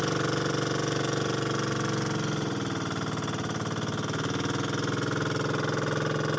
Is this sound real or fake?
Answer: real